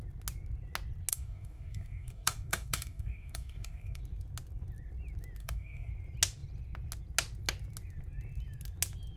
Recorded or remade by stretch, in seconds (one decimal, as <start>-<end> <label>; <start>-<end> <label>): 0.0-1.1 recorded; 1.1-4.0 remade; 4.0-5.4 recorded; 5.4-5.9 remade; 5.9-9.2 recorded